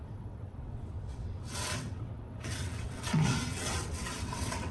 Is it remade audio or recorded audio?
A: remade